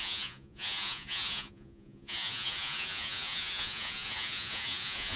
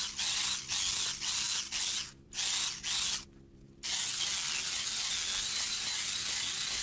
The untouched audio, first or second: second